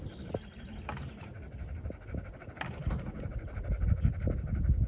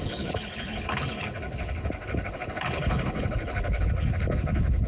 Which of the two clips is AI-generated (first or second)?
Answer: second